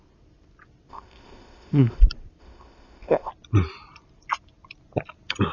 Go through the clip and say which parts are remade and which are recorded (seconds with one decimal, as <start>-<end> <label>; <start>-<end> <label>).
0.0-0.9 recorded; 0.9-2.0 remade; 2.0-2.4 recorded; 2.4-3.3 remade; 3.3-5.5 recorded

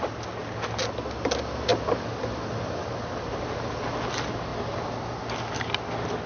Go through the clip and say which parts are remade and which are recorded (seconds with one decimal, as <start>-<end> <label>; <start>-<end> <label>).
0.0-6.3 recorded

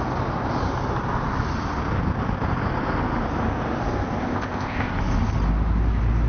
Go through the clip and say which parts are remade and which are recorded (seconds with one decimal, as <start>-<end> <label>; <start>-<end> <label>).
0.0-4.2 recorded; 4.2-4.9 remade; 4.9-6.3 recorded

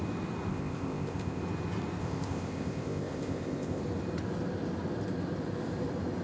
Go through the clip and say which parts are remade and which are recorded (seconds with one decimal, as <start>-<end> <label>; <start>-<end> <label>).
0.0-0.5 recorded; 0.5-1.4 remade; 1.4-2.0 recorded; 2.0-3.8 remade; 3.8-6.2 recorded